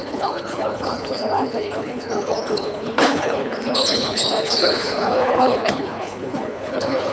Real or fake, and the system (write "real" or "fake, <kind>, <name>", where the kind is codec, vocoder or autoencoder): fake, codec, HILCodec